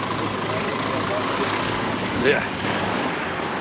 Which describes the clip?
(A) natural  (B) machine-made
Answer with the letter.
B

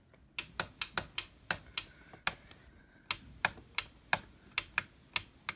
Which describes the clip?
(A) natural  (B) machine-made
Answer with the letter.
A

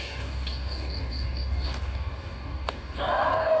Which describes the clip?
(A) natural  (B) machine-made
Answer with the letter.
B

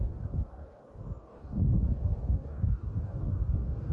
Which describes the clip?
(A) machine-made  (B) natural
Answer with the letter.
A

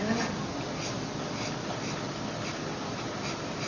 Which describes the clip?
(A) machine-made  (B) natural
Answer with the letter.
B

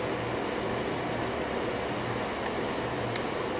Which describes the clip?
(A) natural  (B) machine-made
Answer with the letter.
A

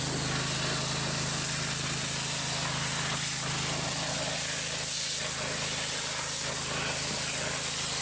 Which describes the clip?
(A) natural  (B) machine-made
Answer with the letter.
A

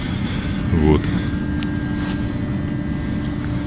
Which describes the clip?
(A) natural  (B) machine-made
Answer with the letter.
A